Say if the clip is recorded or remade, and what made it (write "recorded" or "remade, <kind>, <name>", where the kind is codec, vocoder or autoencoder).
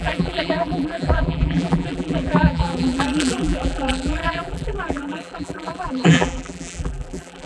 remade, vocoder, BigVGAN v2